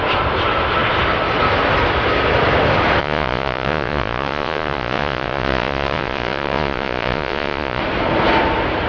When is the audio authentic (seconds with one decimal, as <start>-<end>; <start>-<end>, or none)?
0.0-3.0; 7.8-8.9